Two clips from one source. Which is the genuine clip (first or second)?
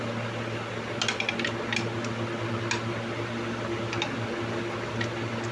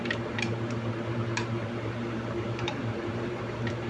first